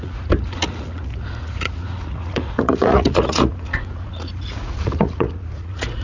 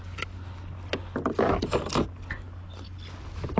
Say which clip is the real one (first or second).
second